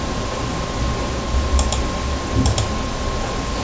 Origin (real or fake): real